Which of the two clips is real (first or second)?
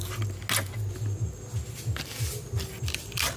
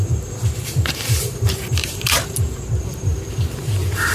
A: first